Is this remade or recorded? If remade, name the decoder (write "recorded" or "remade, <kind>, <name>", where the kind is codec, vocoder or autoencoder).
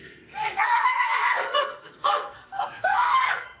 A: remade, codec, SNAC